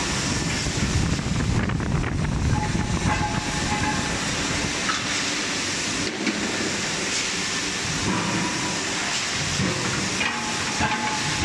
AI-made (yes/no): no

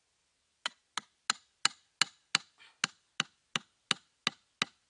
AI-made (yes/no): no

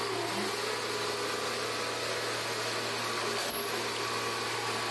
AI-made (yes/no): no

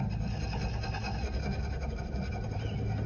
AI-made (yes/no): no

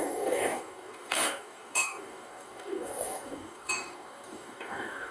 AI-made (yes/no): yes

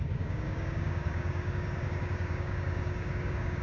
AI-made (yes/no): yes